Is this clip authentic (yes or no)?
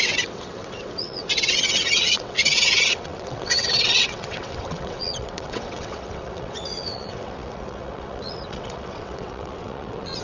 no